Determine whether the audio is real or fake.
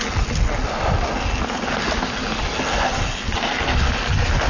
real